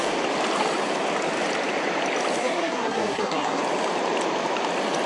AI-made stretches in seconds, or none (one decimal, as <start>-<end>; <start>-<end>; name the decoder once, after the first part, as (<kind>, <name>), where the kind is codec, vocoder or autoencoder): 2.4-3.6 (codec, SNAC)